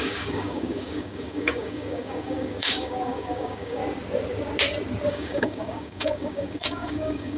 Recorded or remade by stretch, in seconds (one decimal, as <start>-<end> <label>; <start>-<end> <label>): 0.0-3.8 remade; 3.8-5.1 recorded; 5.1-7.4 remade